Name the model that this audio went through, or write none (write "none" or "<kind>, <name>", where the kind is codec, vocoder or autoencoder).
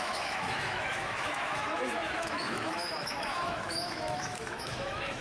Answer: autoencoder, DAC-VAE